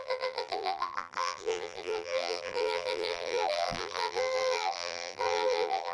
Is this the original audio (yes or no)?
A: no